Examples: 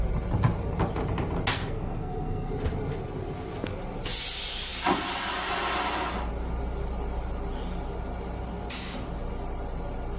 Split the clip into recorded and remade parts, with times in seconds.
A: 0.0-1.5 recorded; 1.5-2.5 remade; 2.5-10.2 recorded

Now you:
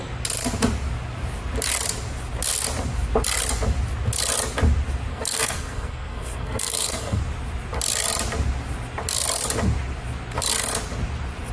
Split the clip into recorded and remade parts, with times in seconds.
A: 0.0-5.1 recorded; 5.1-7.2 remade; 7.2-11.5 recorded

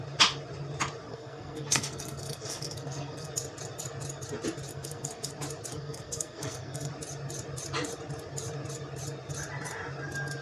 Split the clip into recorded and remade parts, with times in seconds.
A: 0.0-1.1 recorded; 1.1-3.3 remade; 3.3-4.7 recorded; 4.7-5.3 remade; 5.3-5.7 recorded; 5.7-6.9 remade; 6.9-10.4 recorded

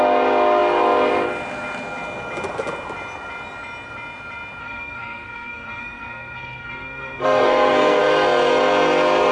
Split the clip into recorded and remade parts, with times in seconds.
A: 0.0-4.6 recorded; 4.6-8.0 remade; 8.0-9.3 recorded

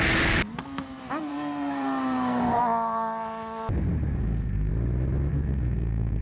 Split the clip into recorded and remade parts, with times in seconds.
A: 0.0-1.3 recorded; 1.3-2.6 remade; 2.6-4.1 recorded; 4.1-4.7 remade; 4.7-5.3 recorded; 5.3-6.2 remade

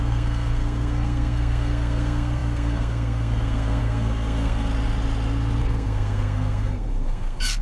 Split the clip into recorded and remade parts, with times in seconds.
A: 0.0-4.7 remade; 4.7-5.6 recorded; 5.6-7.6 remade

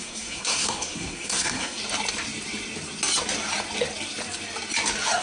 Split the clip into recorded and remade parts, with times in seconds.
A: 0.0-1.8 remade; 1.8-5.2 recorded